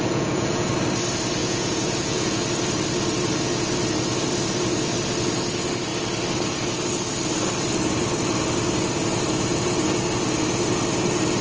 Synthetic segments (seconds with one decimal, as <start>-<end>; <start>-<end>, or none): 0.0-0.7; 1.4-2.4